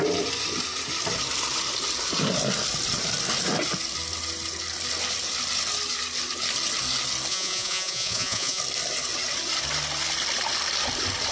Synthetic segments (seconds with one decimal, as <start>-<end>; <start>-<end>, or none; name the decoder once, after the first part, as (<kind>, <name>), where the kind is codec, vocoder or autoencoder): 7.3-8.6 (vocoder, Vocos)